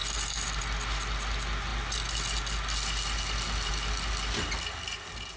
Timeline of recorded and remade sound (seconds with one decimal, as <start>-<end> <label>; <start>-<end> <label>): 0.0-5.4 recorded